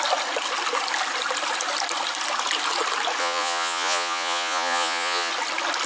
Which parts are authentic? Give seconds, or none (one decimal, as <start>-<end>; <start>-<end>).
0.0-3.2; 5.3-5.9